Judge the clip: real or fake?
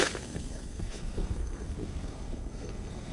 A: fake